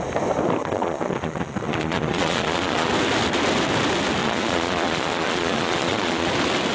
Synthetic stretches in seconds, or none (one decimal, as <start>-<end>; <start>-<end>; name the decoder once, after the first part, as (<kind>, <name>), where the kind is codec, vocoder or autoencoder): 0.6-2.9 (vocoder, Vocos); 4.2-6.3